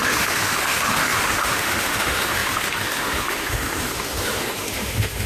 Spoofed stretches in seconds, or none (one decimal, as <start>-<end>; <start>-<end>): 0.0-5.3